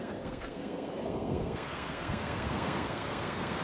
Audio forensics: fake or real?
fake